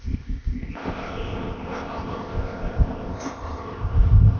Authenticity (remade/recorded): remade